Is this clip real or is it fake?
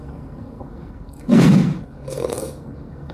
fake